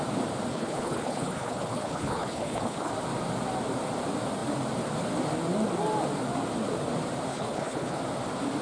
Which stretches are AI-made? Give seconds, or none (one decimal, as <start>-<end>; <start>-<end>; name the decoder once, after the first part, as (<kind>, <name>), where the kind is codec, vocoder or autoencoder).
0.5-2.9 (codec, HILCodec); 7.3-8.0